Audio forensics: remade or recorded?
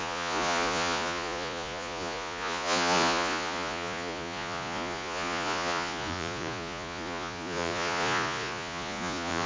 remade